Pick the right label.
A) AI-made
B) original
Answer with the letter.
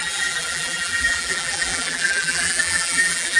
A